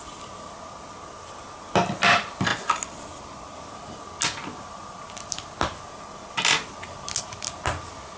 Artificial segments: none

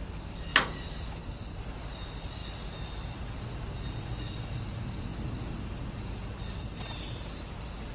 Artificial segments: none

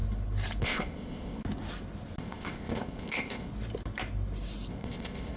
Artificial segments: 0.6-1.4; 2.2-3.5; 4.7-5.4

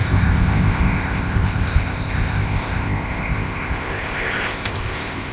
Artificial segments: 0.0-5.3